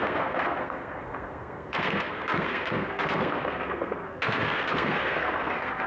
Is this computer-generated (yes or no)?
yes